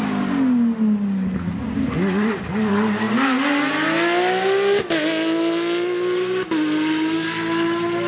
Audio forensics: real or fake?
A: real